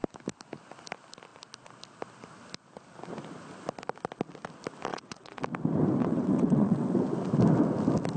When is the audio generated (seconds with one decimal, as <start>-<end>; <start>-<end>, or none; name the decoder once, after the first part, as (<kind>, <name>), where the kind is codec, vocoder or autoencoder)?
4.9-5.4 (vocoder, WaveNeXt); 6.0-7.0

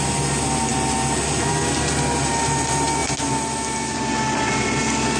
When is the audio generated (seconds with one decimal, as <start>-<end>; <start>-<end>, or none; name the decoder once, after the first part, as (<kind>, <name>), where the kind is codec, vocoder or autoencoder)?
none

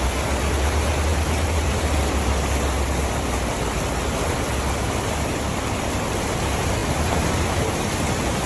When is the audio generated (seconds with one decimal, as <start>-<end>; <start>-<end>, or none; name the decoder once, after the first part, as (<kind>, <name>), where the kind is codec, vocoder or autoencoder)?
none

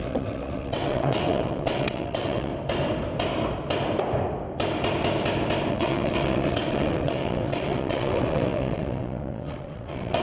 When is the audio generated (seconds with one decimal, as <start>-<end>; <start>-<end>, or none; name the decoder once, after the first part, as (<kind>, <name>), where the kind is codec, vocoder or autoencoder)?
0.0-2.5 (vocoder, WaveNeXt); 5.7-10.2

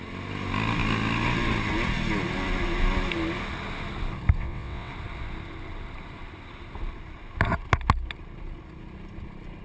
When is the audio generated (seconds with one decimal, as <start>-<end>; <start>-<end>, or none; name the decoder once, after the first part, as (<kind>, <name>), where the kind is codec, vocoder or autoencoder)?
4.4-4.9 (vocoder, WaveNeXt)

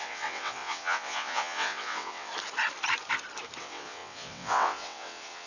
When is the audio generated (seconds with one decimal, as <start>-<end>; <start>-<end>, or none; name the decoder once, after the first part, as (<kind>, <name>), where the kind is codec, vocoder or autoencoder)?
0.0-2.3 (vocoder, WaveNeXt); 3.6-5.5

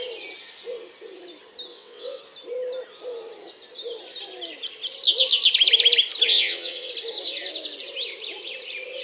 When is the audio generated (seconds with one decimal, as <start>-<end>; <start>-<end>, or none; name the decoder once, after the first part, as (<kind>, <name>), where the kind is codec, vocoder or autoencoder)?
1.7-2.2 (vocoder, WaveNeXt); 6.3-6.9